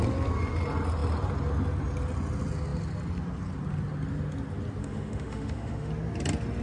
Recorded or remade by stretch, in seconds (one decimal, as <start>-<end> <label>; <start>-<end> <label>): 0.0-4.8 recorded; 4.8-5.9 remade; 5.9-6.6 recorded